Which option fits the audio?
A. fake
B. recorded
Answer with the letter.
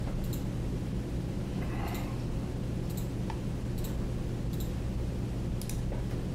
B